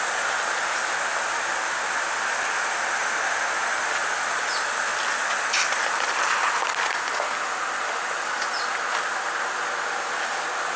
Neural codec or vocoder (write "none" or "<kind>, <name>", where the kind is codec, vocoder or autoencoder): none